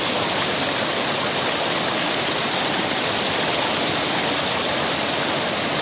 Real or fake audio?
real